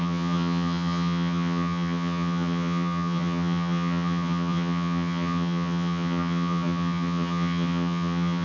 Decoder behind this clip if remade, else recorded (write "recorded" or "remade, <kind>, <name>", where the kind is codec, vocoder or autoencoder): remade, vocoder, HiFi-GAN